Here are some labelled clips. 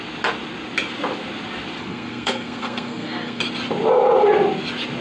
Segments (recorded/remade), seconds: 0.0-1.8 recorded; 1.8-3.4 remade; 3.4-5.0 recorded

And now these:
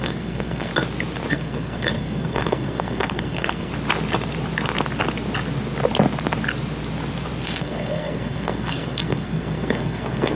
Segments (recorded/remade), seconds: 0.0-0.7 remade; 0.7-1.3 recorded; 1.3-3.7 remade; 3.7-7.6 recorded; 7.6-10.4 remade

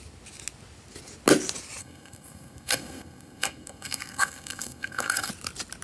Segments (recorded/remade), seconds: 0.0-1.8 recorded; 1.8-5.3 remade; 5.3-5.8 recorded

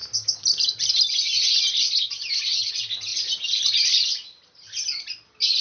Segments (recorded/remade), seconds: 0.0-5.6 recorded

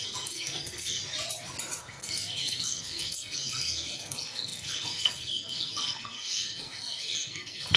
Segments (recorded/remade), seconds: 0.0-1.0 remade; 1.0-1.8 recorded; 1.8-7.8 remade